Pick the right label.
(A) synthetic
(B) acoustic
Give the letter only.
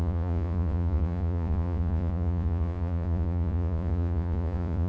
A